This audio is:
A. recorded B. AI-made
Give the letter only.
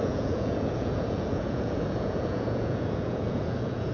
B